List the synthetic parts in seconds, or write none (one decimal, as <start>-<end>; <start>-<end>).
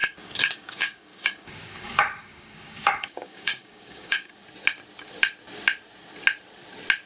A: 0.0-4.3